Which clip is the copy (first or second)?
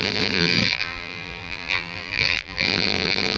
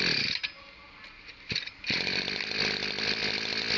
first